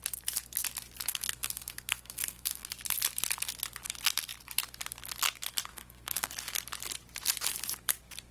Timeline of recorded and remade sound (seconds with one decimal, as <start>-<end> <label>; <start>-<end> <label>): 0.0-1.1 recorded; 1.1-2.7 remade; 2.7-5.7 recorded; 5.7-6.3 remade; 6.3-8.3 recorded